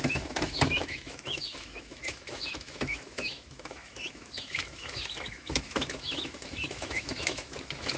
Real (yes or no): no